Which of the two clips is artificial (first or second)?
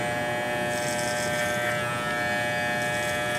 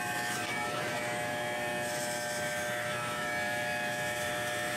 second